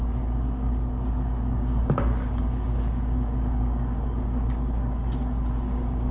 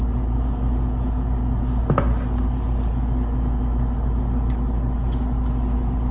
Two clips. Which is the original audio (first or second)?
second